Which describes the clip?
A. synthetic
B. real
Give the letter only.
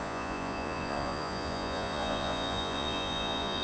A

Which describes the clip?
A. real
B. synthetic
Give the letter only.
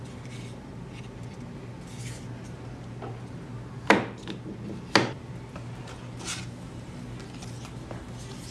A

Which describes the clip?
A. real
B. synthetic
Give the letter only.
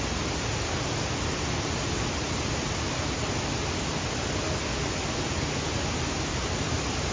A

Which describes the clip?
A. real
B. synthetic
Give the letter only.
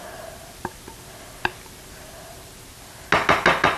A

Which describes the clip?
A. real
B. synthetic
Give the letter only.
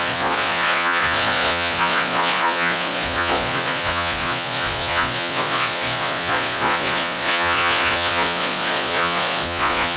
B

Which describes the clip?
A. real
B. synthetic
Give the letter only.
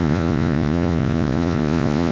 B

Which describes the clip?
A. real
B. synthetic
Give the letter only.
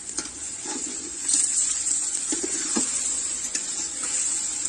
B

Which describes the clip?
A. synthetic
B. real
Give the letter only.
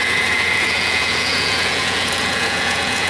A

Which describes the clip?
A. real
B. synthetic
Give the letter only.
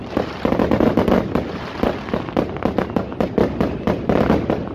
A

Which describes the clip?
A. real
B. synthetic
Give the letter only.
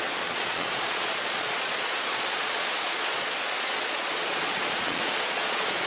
B